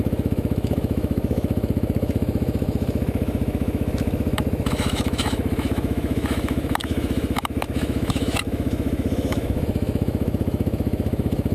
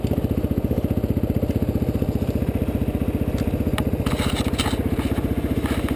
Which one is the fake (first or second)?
first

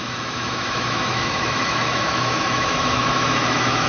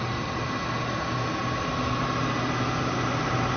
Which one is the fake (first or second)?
first